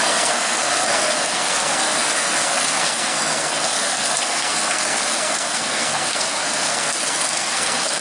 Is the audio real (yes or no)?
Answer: no